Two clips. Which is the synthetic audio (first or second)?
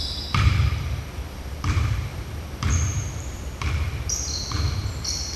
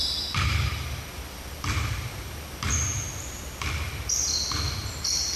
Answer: first